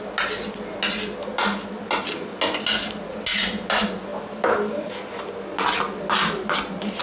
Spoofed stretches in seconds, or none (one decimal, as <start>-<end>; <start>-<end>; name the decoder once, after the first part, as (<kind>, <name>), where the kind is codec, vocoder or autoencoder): none